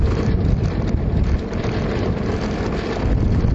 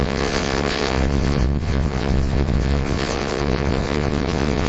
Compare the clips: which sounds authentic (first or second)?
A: first